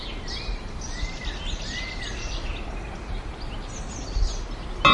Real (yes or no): yes